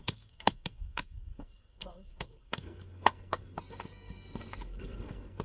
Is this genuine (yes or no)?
no